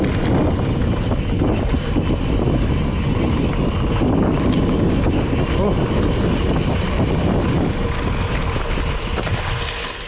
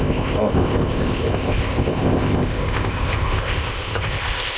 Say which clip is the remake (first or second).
second